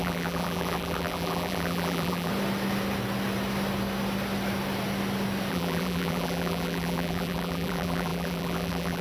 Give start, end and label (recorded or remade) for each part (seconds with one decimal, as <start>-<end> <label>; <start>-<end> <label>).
0.0-2.3 remade; 2.3-5.5 recorded; 5.5-9.0 remade